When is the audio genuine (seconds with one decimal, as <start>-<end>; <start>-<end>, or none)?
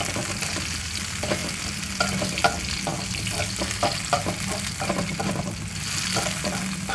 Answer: 0.0-6.9